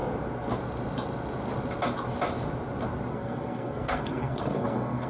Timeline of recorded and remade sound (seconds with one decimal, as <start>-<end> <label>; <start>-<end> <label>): 0.0-3.1 recorded; 3.1-5.1 remade

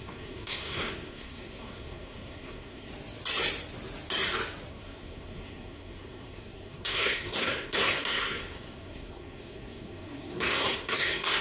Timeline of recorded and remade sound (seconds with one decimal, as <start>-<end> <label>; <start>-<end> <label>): 0.0-2.9 remade; 2.9-4.7 recorded; 4.7-11.4 remade